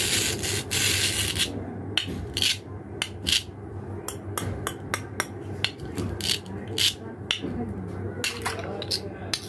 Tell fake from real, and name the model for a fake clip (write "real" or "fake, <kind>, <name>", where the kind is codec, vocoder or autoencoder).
real